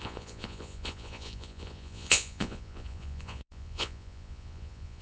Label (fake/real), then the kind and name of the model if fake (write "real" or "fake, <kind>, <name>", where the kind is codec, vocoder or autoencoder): fake, vocoder, Vocos